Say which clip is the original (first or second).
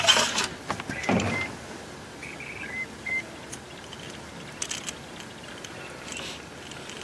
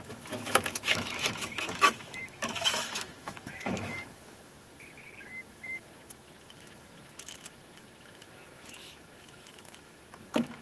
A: first